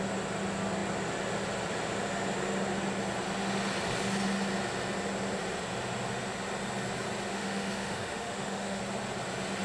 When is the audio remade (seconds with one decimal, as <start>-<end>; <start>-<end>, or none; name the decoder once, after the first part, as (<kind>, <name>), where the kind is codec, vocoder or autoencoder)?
7.3-8.8 (autoencoder, DAC-VAE)